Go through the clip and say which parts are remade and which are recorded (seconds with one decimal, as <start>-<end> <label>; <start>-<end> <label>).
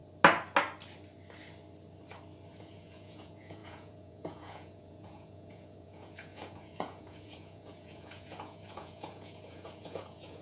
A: 0.0-2.6 recorded; 2.6-10.4 remade